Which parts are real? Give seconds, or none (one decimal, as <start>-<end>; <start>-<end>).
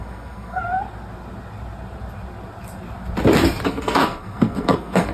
0.6-3.7